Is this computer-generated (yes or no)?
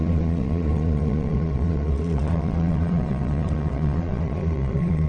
yes